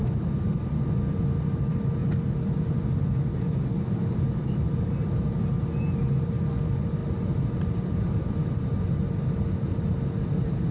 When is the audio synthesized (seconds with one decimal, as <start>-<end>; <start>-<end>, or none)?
none